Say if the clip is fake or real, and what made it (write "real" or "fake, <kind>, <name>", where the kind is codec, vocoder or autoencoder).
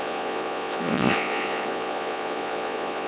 fake, vocoder, Vocos